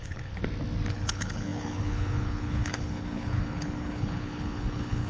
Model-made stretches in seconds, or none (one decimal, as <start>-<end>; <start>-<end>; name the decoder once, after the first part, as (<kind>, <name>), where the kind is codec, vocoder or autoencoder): 0.0-0.4 (codec, HILCodec); 0.9-5.1